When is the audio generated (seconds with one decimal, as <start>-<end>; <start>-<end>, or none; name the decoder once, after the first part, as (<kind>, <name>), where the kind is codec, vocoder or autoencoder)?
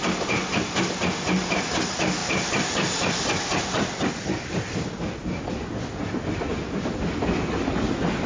2.2-4.7 (vocoder, BigVGAN v2)